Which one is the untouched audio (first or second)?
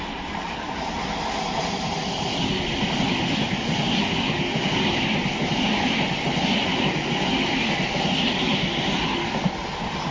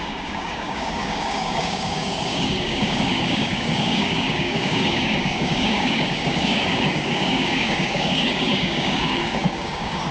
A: first